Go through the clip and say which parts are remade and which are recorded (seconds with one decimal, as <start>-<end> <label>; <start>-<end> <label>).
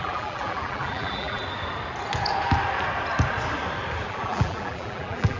0.0-1.4 remade; 1.4-4.1 recorded; 4.1-5.4 remade